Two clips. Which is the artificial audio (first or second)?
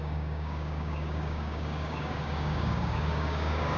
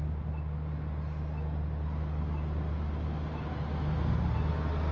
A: first